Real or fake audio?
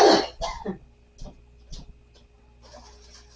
real